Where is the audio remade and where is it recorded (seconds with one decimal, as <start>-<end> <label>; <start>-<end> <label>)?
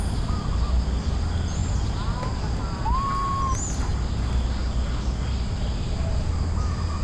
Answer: 0.0-7.0 recorded